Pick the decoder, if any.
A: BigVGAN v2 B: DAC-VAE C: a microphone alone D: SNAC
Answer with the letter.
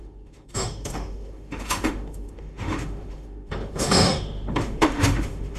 B